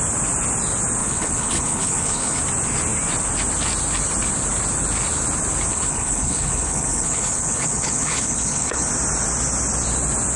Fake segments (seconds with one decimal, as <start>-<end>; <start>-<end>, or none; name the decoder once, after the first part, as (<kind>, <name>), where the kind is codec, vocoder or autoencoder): 1.0-2.4 (codec, HILCodec); 5.7-8.9